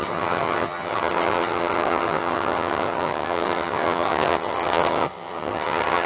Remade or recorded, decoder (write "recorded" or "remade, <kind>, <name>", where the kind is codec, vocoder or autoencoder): remade, vocoder, HiFi-GAN